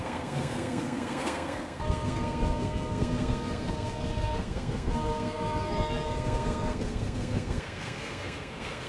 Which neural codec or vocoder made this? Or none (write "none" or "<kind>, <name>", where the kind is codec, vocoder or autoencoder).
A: codec, SNAC